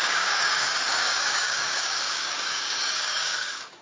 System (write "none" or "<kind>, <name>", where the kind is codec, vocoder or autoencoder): codec, DAC